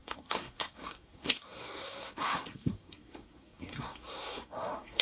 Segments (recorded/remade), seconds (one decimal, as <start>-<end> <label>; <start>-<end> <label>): 0.0-5.0 remade